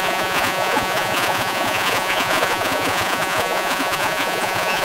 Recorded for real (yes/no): no